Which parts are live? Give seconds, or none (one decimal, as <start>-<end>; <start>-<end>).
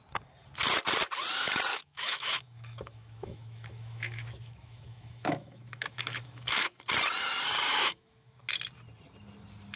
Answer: 0.0-1.7; 6.8-7.7; 8.4-9.8